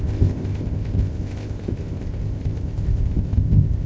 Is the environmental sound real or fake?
fake